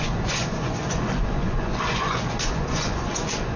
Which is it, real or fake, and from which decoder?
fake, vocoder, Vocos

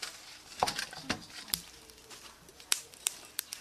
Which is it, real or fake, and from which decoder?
real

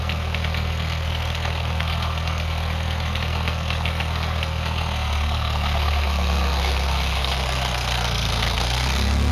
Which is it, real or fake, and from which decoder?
fake, codec, SNAC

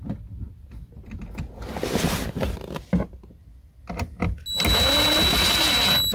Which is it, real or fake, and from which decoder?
real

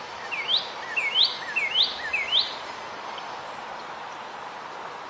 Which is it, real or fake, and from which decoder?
real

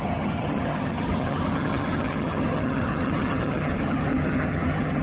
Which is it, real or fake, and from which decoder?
fake, vocoder, HiFi-GAN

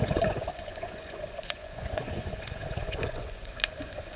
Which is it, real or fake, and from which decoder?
fake, vocoder, Vocos